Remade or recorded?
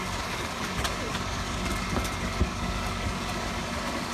remade